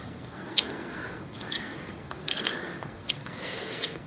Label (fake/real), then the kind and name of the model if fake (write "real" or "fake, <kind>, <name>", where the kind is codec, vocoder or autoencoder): fake, codec, SNAC